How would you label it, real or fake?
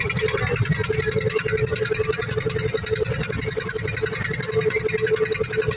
real